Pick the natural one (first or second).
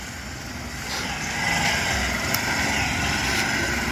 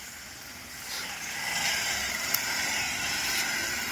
first